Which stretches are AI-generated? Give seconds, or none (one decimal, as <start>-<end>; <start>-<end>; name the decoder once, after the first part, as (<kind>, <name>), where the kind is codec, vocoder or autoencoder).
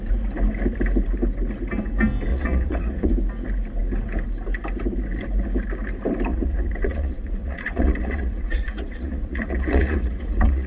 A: 2.3-3.1 (vocoder, Vocos); 6.3-10.7